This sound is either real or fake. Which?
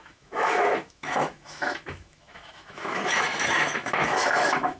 fake